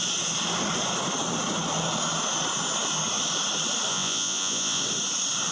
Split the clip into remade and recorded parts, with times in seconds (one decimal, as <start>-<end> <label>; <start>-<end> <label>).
0.0-3.9 recorded; 3.9-4.8 remade; 4.8-5.5 recorded